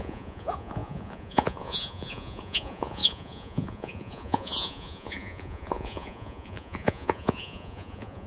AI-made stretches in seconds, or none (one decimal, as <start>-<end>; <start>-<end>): 0.0-8.3